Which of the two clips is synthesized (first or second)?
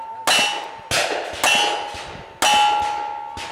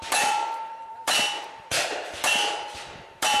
second